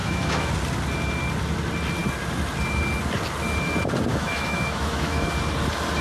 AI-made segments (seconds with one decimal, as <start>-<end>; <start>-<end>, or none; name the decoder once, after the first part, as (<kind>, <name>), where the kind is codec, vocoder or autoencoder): 0.0-0.5 (autoencoder, DAC-VAE); 4.1-5.3